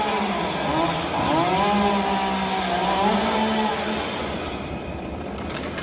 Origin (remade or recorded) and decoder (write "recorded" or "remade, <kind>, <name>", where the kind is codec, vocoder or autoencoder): recorded